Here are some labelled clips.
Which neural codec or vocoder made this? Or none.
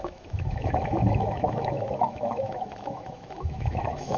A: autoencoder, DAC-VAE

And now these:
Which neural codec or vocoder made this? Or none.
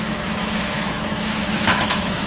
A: autoencoder, DAC-VAE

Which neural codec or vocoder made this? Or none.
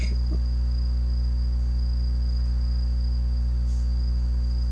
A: none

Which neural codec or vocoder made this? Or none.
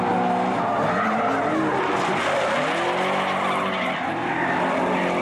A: none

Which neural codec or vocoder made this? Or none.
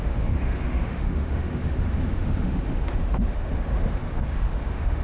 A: autoencoder, DAC-VAE